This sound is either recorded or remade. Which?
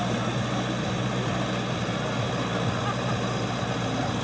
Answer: recorded